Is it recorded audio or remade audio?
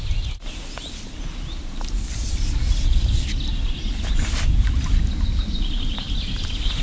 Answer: recorded